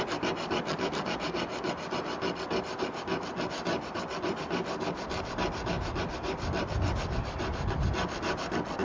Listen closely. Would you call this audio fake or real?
real